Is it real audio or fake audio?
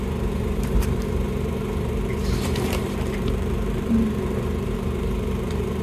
fake